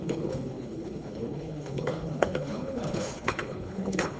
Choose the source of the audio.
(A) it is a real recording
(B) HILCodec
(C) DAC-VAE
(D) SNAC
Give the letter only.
B